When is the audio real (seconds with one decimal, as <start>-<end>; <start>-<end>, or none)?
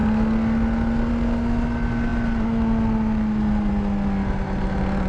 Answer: 0.0-5.1